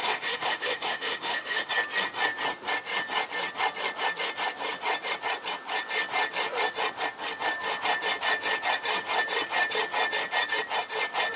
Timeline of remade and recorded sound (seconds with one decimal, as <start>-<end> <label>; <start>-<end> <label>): 0.0-1.7 remade; 1.7-11.4 recorded